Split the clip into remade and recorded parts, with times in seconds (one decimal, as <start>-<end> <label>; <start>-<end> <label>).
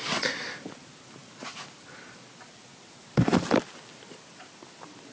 0.0-5.1 recorded